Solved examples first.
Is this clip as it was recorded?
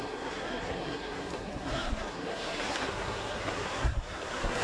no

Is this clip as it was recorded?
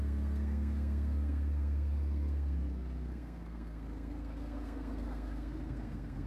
no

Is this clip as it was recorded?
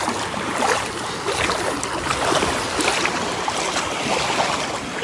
yes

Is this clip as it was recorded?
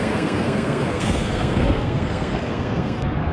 no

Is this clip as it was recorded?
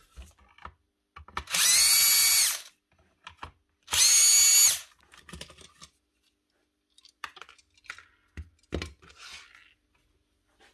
yes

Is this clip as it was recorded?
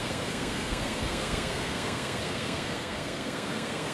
no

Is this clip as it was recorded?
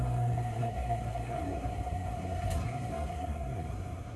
no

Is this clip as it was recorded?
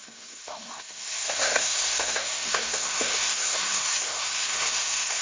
no